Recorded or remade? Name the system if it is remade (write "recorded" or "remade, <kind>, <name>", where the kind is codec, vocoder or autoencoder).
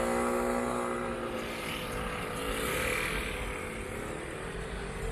recorded